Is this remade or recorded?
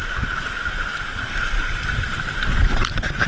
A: recorded